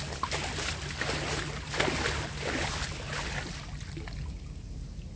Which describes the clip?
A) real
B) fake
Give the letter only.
A